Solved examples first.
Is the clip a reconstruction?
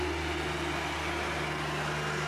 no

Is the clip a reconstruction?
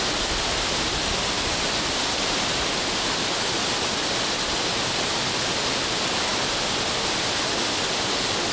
no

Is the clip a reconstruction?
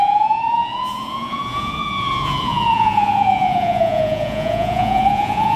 yes